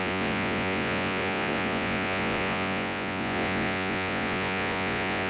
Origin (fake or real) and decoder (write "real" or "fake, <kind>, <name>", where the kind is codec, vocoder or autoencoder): fake, vocoder, Vocos